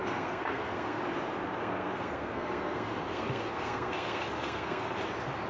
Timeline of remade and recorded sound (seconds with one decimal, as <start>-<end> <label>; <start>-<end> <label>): 0.0-1.0 remade; 1.0-1.6 recorded; 1.6-4.9 remade; 4.9-5.5 recorded